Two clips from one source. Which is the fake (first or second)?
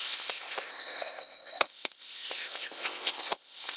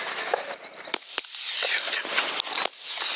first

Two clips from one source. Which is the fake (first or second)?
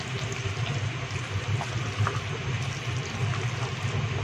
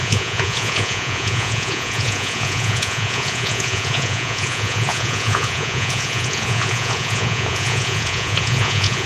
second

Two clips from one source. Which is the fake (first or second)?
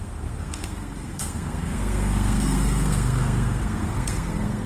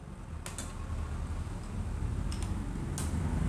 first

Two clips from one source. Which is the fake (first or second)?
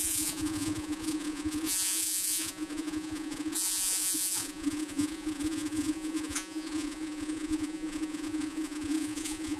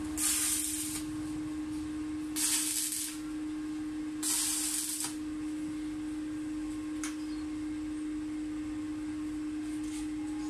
first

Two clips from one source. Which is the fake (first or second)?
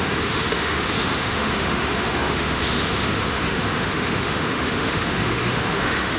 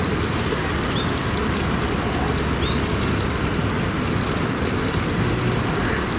first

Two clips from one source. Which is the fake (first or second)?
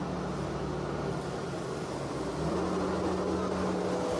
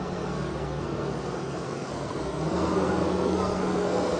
second